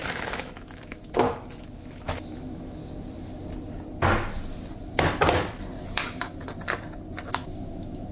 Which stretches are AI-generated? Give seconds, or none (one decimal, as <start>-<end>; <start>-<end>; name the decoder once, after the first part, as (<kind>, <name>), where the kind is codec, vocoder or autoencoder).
0.0-2.8 (autoencoder, DAC-VAE); 7.3-8.1